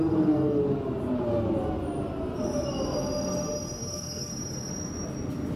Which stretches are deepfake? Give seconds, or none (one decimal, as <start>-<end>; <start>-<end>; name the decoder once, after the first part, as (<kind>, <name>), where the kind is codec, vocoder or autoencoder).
0.0-0.6 (codec, SNAC); 3.9-4.3